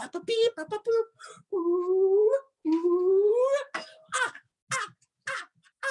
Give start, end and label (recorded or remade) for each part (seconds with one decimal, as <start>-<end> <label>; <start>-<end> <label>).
0.0-5.9 recorded